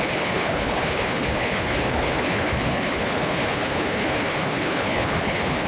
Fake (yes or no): yes